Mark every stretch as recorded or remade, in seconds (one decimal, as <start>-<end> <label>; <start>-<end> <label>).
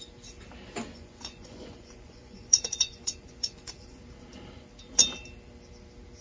0.0-0.9 recorded; 0.9-4.0 remade; 4.0-6.2 recorded